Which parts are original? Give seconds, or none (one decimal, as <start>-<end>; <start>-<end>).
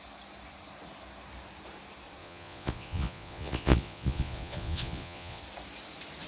0.0-2.2; 5.4-6.3